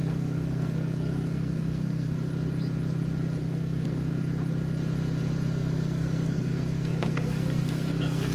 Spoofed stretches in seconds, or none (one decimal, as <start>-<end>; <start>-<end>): 0.0-2.3; 3.4-4.1; 5.5-8.3